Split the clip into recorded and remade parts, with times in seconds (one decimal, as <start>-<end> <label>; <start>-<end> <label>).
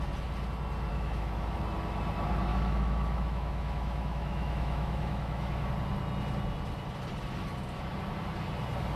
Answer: 0.0-0.9 recorded; 0.9-1.6 remade; 1.6-2.5 recorded; 2.5-5.7 remade; 5.7-9.0 recorded